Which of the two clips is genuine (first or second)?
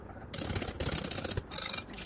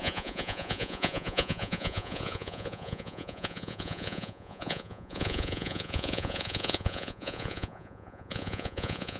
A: first